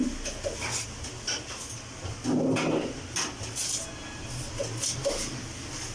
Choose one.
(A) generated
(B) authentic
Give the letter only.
B